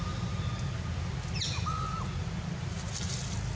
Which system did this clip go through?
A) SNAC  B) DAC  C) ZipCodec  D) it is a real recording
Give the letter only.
D